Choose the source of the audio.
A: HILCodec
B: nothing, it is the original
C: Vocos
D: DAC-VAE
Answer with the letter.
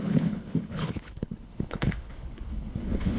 A